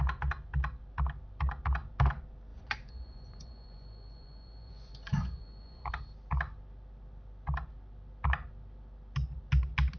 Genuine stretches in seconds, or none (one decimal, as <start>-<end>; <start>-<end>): 0.0-2.5; 5.9-10.0

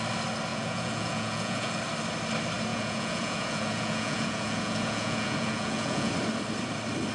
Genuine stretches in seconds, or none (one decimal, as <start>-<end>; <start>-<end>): 0.0-0.5; 1.8-2.7; 6.1-7.1

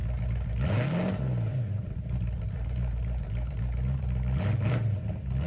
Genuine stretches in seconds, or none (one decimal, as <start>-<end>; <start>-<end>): 0.0-1.5; 4.8-5.5

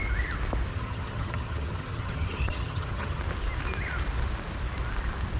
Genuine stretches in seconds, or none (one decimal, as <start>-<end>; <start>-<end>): 0.0-0.7; 3.2-5.4

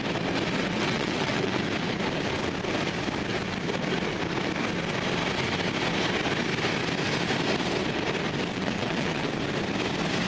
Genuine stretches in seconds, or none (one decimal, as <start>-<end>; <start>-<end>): 0.0-0.6; 1.6-8.5; 9.3-10.3